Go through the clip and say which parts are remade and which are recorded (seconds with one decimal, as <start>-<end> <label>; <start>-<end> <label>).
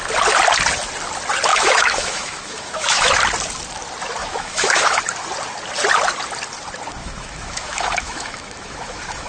0.0-1.5 recorded; 1.5-3.1 remade; 3.1-4.2 recorded; 4.2-5.0 remade; 5.0-7.0 recorded; 7.0-9.3 remade